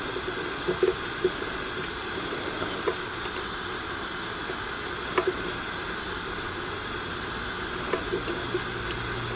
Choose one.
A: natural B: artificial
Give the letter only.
A